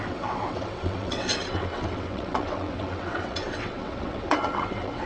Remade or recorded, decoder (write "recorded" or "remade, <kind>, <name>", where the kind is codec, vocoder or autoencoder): remade, vocoder, WaveNeXt